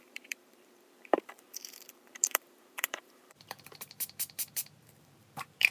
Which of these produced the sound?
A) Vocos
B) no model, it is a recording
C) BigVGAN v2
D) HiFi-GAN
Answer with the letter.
C